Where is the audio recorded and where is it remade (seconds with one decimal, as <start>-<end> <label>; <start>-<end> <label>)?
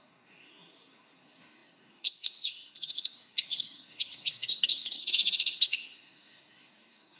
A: 0.0-7.2 remade